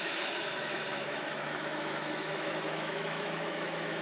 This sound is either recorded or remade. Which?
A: remade